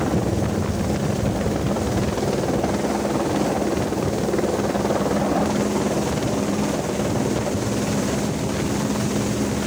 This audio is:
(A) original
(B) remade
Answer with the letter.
A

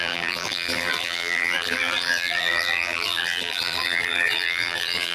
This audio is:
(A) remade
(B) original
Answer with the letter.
A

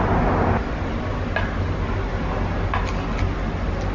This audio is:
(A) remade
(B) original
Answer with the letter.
B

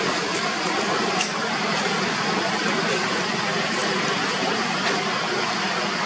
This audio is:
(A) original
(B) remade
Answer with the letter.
A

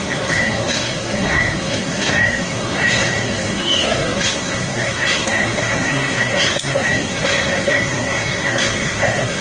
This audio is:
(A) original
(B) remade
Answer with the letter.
B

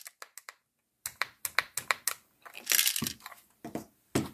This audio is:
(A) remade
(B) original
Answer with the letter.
B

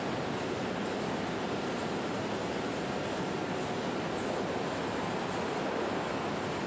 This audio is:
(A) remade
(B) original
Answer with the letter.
B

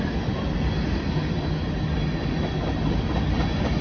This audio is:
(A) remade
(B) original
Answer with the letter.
B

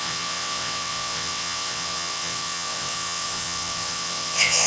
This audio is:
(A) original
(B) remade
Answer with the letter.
B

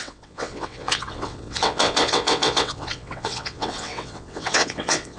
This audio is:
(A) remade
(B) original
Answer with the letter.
A